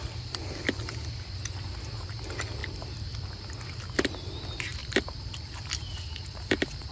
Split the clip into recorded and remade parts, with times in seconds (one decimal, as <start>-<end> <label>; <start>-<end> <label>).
0.0-4.8 recorded; 4.8-5.6 remade; 5.6-6.9 recorded